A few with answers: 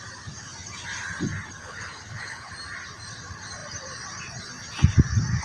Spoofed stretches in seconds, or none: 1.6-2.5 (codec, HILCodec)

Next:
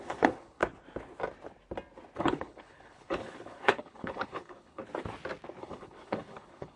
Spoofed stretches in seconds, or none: 0.0-0.6 (codec, HILCodec); 2.2-4.8; 5.6-6.8

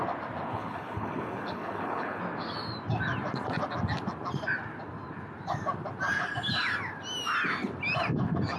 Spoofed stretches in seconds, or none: 0.5-2.2 (codec, HILCodec)